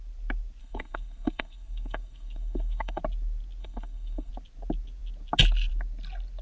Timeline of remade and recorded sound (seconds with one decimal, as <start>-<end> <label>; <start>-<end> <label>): 0.0-0.6 recorded; 0.6-3.0 remade; 3.0-3.6 recorded; 3.6-4.3 remade; 4.3-6.4 recorded